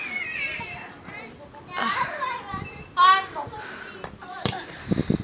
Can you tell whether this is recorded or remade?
recorded